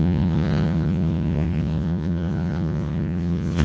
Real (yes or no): no